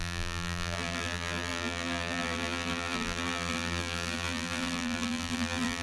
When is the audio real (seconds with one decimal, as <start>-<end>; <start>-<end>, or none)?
none